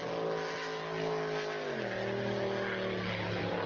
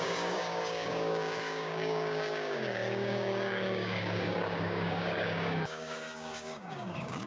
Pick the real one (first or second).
first